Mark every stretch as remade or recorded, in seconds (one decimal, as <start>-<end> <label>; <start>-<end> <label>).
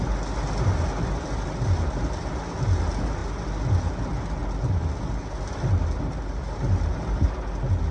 0.0-7.9 recorded